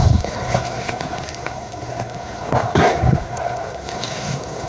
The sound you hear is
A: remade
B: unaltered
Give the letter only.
A